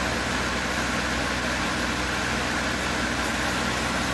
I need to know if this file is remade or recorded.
recorded